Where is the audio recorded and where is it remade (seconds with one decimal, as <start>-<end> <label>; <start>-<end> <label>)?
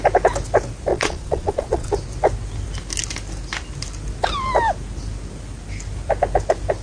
0.0-0.9 recorded; 0.9-1.9 remade; 1.9-6.8 recorded